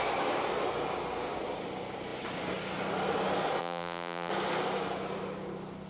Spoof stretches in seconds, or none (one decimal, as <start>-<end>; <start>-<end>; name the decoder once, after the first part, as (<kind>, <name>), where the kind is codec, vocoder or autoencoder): 3.6-4.3 (vocoder, BigVGAN v2)